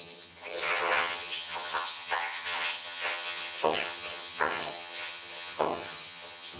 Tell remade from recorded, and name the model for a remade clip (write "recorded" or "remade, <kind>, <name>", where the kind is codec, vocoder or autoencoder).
remade, vocoder, HiFi-GAN